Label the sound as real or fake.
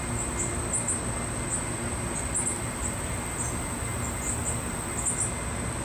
real